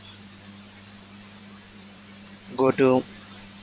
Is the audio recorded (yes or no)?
no